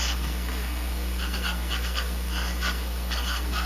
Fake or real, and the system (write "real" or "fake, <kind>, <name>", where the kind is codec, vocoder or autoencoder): fake, codec, SNAC